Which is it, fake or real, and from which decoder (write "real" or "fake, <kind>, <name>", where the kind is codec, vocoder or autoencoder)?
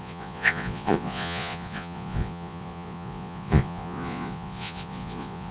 fake, vocoder, Vocos